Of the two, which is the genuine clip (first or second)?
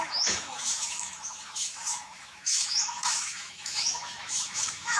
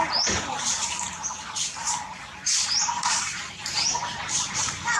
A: second